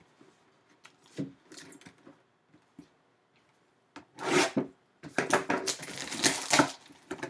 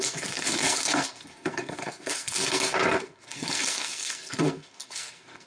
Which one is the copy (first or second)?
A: second